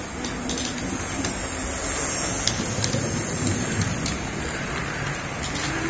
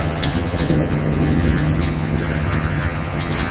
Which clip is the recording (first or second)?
first